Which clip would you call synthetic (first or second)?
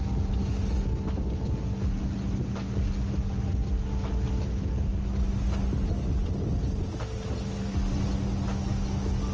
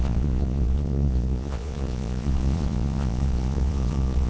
second